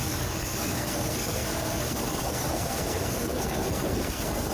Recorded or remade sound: remade